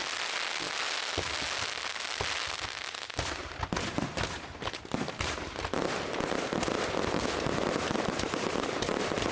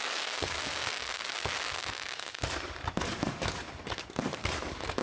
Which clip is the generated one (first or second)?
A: second